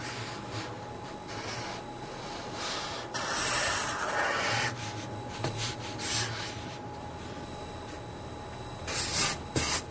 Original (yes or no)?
yes